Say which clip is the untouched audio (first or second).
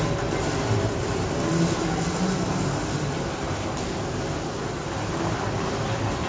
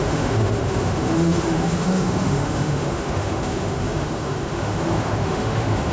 first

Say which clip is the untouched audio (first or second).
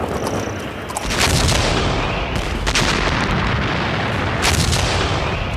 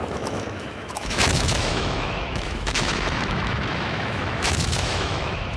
first